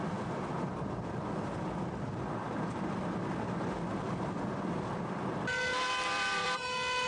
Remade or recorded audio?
remade